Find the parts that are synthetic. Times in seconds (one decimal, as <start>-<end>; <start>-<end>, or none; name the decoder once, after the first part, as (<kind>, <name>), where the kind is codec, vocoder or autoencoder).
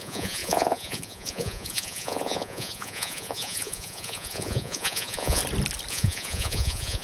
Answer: 0.0-5.4 (vocoder, Vocos); 5.9-7.0